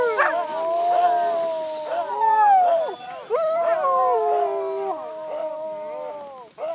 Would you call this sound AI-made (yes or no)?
no